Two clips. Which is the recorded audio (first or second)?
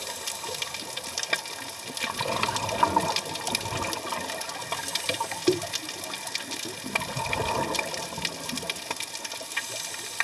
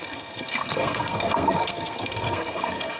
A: first